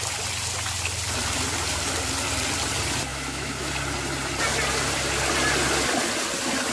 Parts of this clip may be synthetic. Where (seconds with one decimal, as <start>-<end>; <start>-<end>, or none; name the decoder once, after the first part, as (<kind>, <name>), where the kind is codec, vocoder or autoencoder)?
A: 3.1-3.7 (autoencoder, DAC-VAE)